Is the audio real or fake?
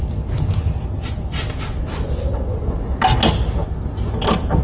real